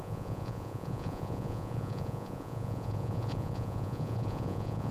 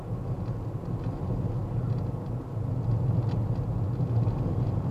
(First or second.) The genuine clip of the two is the second